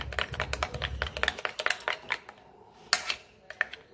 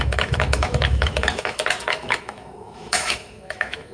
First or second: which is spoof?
second